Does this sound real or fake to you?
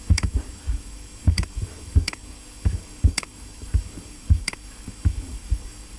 fake